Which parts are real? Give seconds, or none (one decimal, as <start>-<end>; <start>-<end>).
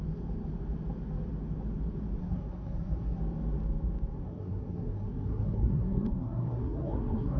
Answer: 0.0-2.2; 3.2-4.1